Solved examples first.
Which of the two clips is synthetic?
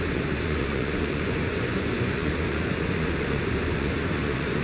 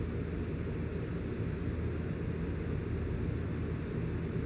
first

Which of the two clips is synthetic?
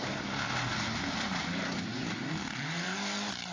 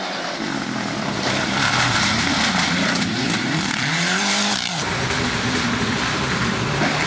second